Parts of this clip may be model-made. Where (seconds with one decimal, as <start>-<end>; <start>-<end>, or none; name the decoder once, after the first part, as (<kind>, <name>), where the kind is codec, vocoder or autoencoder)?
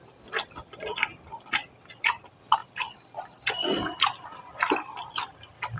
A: 2.6-5.2 (vocoder, BigVGAN v2)